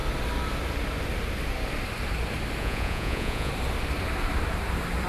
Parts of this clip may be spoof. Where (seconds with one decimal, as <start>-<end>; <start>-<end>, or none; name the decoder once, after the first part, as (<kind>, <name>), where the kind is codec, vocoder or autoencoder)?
2.6-3.5 (vocoder, Vocos)